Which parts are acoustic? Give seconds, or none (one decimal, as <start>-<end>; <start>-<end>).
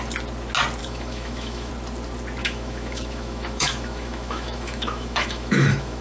0.0-0.8; 1.7-2.4